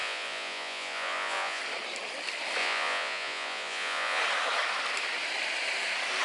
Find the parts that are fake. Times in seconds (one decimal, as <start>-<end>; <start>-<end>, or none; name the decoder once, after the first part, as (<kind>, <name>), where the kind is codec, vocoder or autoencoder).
0.0-1.6 (vocoder, Vocos); 2.6-4.2